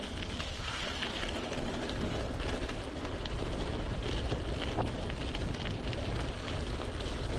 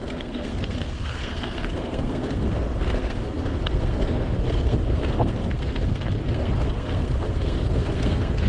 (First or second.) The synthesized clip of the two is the second